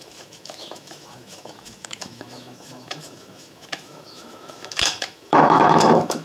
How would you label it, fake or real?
fake